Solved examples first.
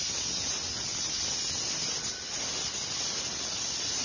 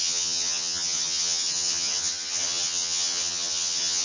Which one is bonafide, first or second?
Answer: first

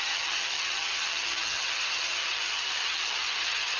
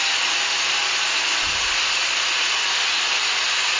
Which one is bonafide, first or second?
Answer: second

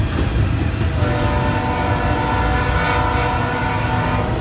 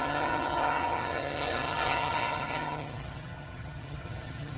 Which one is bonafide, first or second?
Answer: first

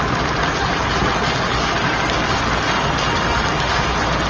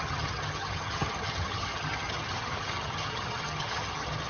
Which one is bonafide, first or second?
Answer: first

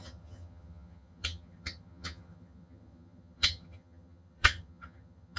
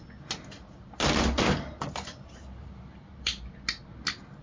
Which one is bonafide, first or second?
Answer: second